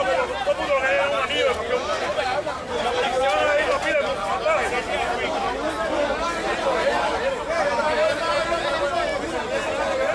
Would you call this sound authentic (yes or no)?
yes